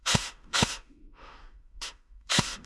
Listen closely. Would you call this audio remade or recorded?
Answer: remade